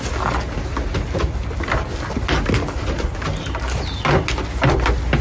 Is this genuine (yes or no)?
yes